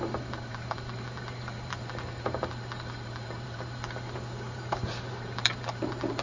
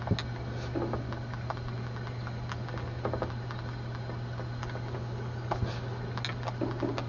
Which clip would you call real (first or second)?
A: second